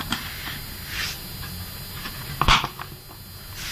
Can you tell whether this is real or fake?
real